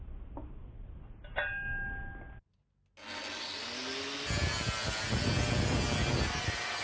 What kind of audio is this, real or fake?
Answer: real